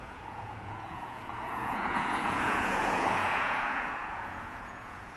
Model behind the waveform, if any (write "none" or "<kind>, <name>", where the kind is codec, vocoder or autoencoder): vocoder, Vocos